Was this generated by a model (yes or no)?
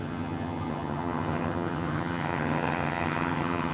yes